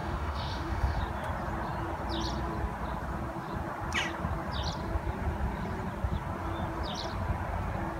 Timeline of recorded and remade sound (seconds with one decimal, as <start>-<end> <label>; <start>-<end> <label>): 0.0-1.0 remade; 1.0-8.0 recorded